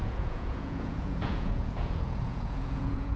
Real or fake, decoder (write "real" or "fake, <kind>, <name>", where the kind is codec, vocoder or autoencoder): fake, vocoder, Vocos